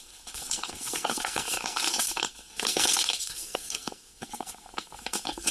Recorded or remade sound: remade